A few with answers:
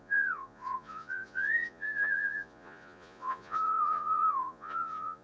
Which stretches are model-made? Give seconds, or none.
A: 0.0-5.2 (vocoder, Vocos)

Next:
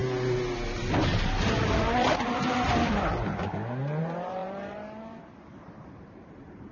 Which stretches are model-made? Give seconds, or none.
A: 4.0-6.7 (vocoder, BigVGAN v2)

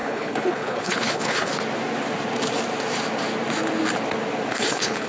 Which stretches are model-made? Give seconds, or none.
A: 0.0-1.5 (codec, HILCodec); 4.5-5.1

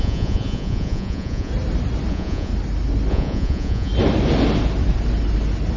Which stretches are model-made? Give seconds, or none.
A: 0.0-1.5 (vocoder, Vocos); 2.1-2.5; 3.1-3.9

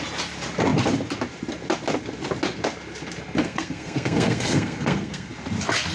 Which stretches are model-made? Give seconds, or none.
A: 3.4-5.3 (codec, SNAC)